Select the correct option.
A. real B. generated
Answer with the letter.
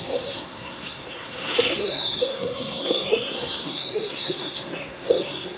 B